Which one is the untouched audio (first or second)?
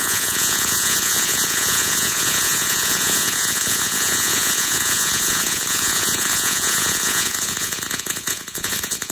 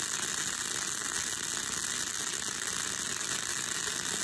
second